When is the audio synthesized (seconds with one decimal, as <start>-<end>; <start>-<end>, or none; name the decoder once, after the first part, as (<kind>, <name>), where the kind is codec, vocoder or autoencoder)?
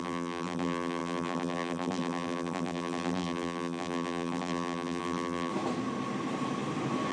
0.0-5.5 (vocoder, BigVGAN v2)